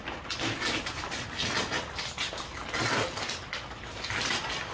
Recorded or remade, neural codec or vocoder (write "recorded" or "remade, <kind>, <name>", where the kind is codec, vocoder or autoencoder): recorded